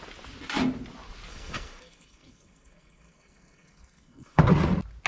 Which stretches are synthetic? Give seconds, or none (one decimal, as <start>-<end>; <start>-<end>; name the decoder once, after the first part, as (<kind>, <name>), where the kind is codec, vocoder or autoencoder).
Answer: 1.3-4.4 (codec, SNAC)

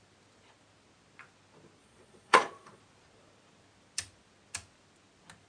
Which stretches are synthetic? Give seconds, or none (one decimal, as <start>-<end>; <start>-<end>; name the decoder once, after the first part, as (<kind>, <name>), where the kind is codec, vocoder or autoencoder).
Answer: 1.8-2.8 (vocoder, Vocos)

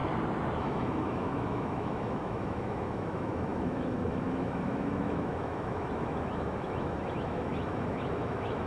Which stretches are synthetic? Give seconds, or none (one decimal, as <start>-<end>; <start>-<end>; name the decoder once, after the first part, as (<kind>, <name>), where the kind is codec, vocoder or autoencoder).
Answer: 0.6-8.7 (autoencoder, DAC-VAE)